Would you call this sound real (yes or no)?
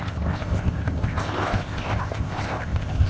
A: no